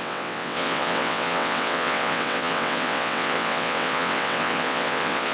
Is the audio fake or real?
fake